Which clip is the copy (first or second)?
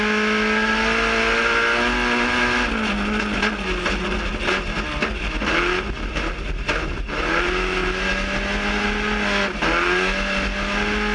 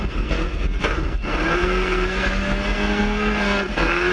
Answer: second